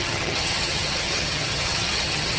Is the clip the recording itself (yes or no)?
no